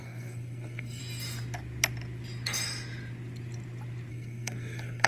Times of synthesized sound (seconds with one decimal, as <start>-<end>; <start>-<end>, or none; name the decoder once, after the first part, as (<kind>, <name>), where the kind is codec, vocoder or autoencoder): 0.0-1.0 (codec, SNAC); 4.1-5.1